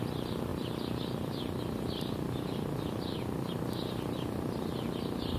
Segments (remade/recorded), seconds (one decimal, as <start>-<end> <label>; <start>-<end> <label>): 0.0-5.4 recorded